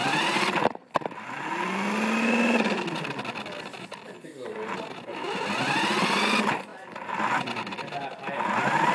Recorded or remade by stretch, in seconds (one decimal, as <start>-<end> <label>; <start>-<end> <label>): 0.0-8.9 recorded